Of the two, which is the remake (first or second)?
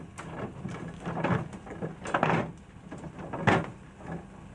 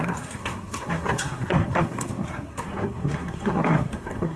second